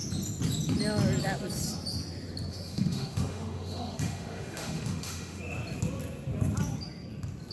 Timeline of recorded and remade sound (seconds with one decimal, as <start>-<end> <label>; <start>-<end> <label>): 0.0-2.5 recorded; 2.5-5.4 remade; 5.4-7.5 recorded